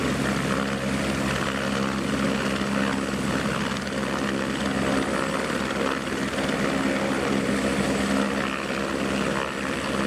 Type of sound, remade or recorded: recorded